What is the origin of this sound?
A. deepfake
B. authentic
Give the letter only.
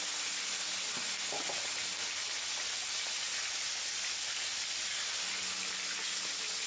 B